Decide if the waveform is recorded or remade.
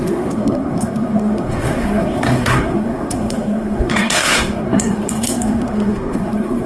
remade